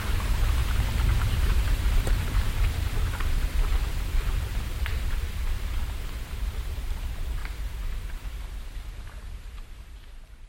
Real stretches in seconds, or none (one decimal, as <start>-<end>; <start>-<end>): 7.4-10.5